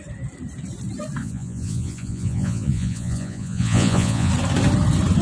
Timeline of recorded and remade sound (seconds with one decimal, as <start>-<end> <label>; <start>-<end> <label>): 0.0-1.2 recorded; 1.2-4.3 remade; 4.3-5.2 recorded